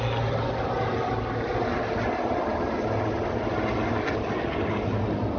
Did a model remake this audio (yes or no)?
no